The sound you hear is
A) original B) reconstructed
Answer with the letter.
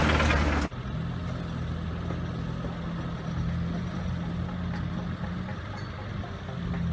A